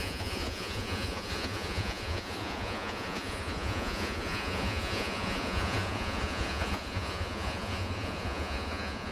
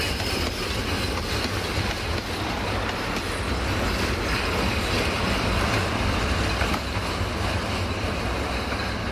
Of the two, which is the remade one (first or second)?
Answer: first